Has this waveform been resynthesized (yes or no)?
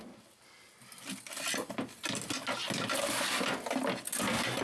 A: no